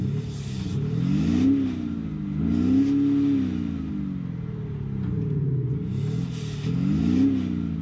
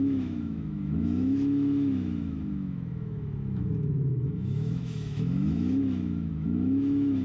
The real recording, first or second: first